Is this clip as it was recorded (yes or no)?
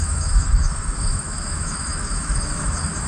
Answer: no